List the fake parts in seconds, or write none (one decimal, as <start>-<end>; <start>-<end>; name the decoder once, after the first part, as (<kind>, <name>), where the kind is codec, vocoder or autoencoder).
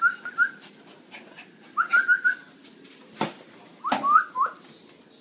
none